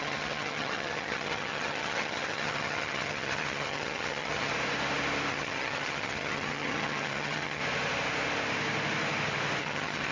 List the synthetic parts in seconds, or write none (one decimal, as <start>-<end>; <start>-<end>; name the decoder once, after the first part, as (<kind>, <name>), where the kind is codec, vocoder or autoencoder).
0.0-4.5 (vocoder, HiFi-GAN); 5.3-7.6; 9.6-10.1